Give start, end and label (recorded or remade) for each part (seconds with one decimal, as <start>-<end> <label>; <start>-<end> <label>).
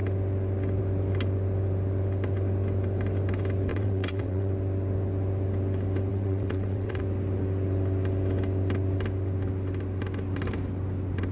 0.0-3.7 recorded; 3.7-4.5 remade; 4.5-6.1 recorded; 6.1-7.0 remade; 7.0-11.3 recorded